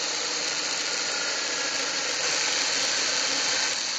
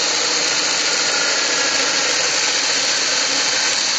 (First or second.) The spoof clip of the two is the first